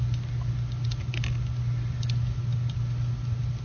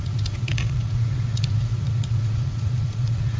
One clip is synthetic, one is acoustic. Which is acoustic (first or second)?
first